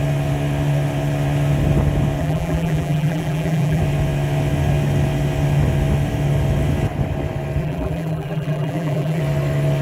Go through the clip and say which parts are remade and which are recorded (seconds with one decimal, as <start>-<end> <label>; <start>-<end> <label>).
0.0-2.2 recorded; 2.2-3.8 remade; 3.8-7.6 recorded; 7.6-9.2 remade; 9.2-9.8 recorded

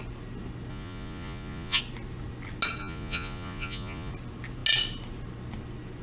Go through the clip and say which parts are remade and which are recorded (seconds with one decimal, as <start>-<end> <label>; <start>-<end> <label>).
0.0-0.7 recorded; 0.7-1.8 remade; 1.8-2.8 recorded; 2.8-4.1 remade; 4.1-6.0 recorded

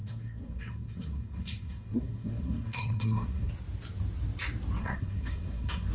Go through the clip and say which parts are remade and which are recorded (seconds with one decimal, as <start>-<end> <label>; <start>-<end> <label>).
0.0-3.5 remade; 3.5-4.8 recorded; 4.8-5.9 remade

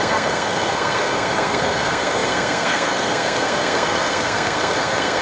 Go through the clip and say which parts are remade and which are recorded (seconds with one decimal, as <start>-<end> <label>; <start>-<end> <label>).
0.0-5.2 remade

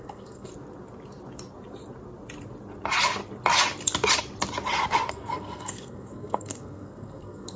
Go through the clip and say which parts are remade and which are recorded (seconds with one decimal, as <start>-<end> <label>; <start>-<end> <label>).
0.0-0.5 remade; 0.5-5.1 recorded; 5.1-7.6 remade

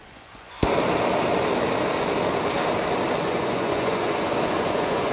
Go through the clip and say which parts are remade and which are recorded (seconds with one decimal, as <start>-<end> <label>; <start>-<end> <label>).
0.0-0.6 remade; 0.6-3.2 recorded; 3.2-5.1 remade